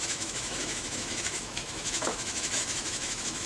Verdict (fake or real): fake